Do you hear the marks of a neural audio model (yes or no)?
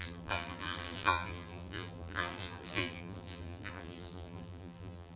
yes